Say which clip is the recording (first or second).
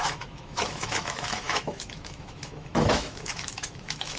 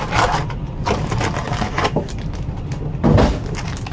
second